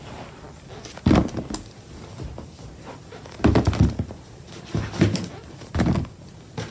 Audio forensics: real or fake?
real